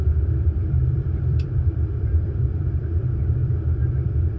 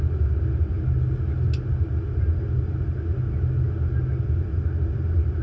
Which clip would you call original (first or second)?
second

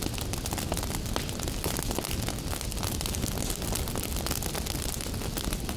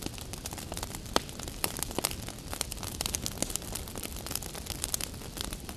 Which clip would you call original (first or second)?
first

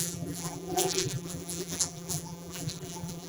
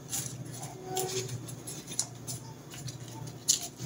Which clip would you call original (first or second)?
second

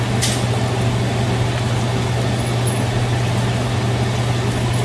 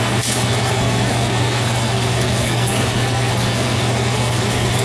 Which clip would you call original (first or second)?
first